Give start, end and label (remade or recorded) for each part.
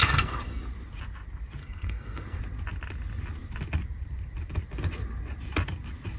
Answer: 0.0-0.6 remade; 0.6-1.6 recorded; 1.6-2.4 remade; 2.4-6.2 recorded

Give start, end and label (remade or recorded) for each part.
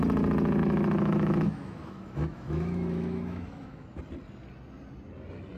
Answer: 0.0-0.6 recorded; 0.6-4.0 remade; 4.0-5.6 recorded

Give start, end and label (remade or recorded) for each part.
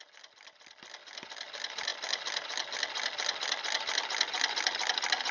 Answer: 0.0-5.3 recorded